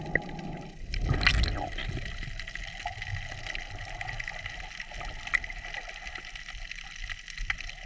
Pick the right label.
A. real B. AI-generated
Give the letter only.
A